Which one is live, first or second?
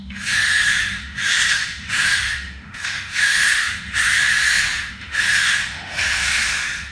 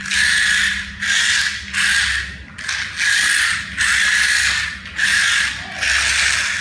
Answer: second